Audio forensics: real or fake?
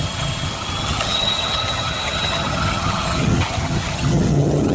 fake